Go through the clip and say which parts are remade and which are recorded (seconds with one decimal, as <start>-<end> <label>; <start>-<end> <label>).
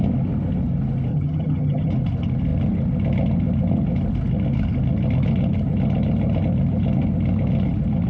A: 0.0-1.1 recorded; 1.1-1.9 remade; 1.9-8.1 recorded